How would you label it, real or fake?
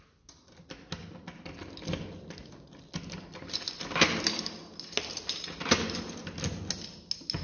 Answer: real